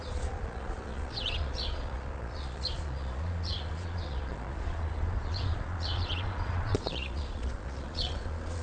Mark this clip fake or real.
fake